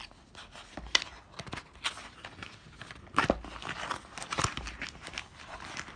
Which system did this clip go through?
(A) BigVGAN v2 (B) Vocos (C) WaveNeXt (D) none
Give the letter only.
D